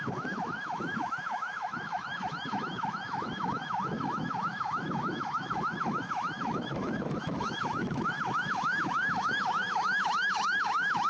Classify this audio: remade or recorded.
remade